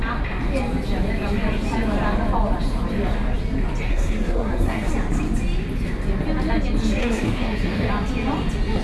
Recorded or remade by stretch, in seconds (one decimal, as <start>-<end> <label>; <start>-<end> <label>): 0.0-3.9 recorded; 3.9-4.9 remade; 4.9-7.0 recorded; 7.0-7.9 remade; 7.9-8.8 recorded